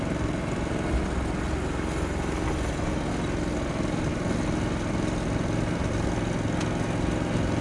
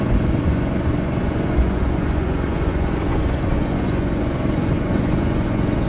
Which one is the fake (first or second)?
second